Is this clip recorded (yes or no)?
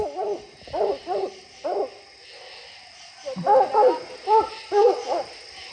yes